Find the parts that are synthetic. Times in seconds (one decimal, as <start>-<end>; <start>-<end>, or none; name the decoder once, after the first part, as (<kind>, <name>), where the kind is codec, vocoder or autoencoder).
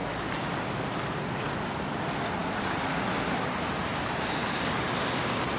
none